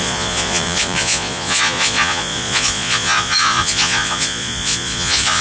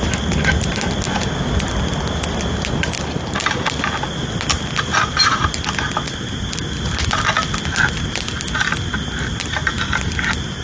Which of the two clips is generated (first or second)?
first